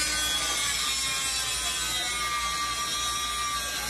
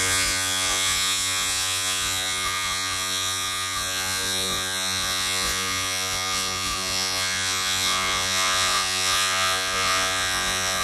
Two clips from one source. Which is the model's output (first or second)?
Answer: second